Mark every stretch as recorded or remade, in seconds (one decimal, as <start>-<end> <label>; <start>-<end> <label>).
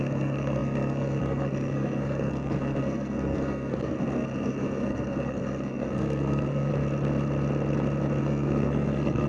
0.0-6.7 remade; 6.7-8.2 recorded; 8.2-9.3 remade